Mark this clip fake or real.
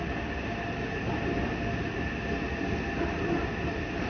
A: real